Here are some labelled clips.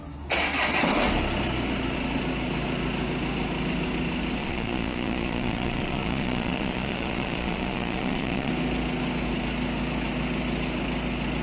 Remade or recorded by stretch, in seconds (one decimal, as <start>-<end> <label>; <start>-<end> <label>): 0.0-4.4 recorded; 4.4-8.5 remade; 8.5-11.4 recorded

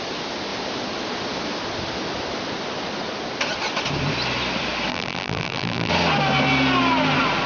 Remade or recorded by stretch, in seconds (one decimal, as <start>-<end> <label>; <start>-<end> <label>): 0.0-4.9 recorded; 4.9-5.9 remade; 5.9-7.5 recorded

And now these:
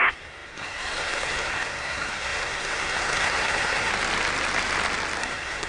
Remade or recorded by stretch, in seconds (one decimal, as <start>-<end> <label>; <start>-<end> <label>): 0.0-3.9 remade; 3.9-5.2 recorded; 5.2-5.7 remade